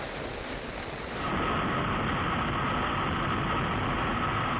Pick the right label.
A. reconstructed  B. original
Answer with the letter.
B